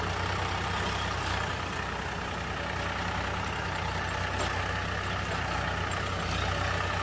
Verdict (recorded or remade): recorded